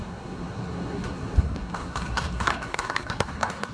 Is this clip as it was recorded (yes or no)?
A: no